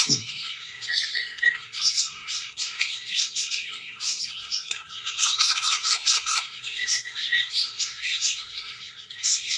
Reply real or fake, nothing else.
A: fake